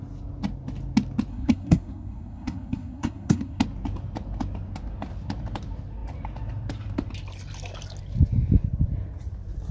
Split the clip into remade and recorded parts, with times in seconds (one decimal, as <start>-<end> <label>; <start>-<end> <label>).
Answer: 0.0-1.3 recorded; 1.3-3.6 remade; 3.6-9.7 recorded